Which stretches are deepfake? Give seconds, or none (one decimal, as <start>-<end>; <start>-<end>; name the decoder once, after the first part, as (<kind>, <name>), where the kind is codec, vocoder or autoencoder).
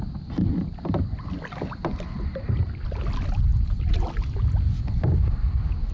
none